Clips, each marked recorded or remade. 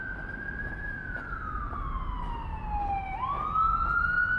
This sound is recorded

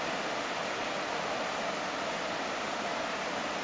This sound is recorded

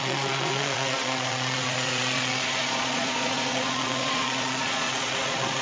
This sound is remade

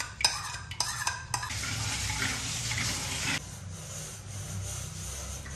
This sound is recorded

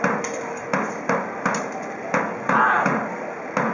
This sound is recorded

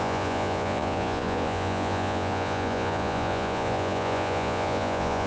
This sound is remade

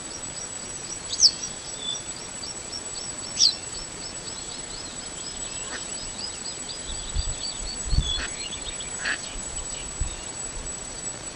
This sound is remade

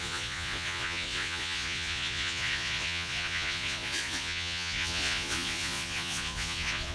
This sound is remade